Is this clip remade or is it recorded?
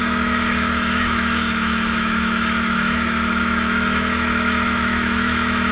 remade